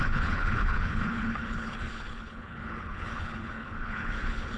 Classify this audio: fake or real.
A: fake